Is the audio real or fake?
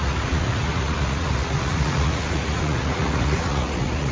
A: fake